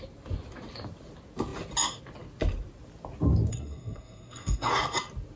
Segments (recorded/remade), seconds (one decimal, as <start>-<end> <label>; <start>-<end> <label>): 0.0-3.5 recorded; 3.5-4.7 remade; 4.7-5.4 recorded